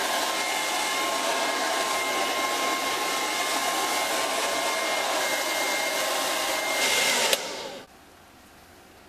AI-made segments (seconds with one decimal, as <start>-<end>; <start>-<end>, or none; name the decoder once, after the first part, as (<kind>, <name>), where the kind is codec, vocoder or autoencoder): none